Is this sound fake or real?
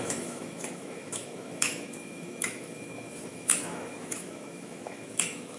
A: fake